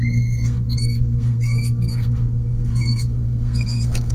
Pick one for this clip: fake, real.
fake